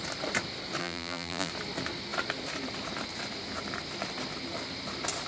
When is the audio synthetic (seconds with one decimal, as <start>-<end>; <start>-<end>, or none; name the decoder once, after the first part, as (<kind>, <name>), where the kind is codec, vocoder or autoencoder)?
0.8-1.5 (vocoder, BigVGAN v2)